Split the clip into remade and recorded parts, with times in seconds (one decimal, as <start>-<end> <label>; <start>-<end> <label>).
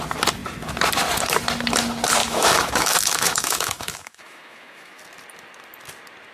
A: 0.0-2.2 recorded; 2.2-5.0 remade; 5.0-6.3 recorded